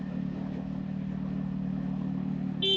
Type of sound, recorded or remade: recorded